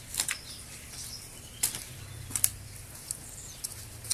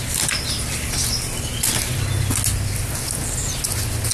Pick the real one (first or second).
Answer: second